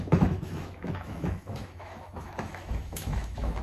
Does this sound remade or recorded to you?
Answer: remade